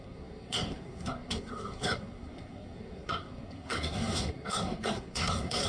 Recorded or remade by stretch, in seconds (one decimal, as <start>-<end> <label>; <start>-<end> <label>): 0.0-5.7 remade